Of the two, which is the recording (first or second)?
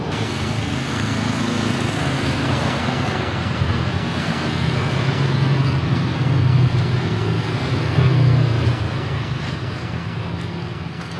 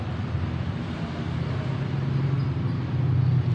second